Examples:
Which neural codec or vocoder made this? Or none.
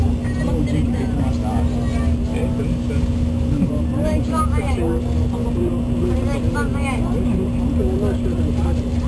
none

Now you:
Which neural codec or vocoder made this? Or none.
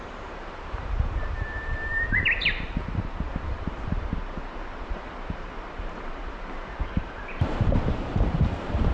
vocoder, BigVGAN v2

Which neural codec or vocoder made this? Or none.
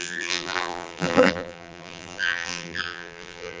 vocoder, BigVGAN v2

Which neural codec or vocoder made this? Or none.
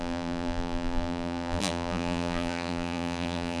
vocoder, BigVGAN v2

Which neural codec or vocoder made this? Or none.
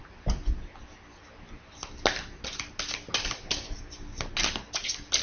none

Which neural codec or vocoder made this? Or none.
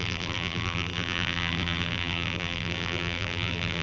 vocoder, BigVGAN v2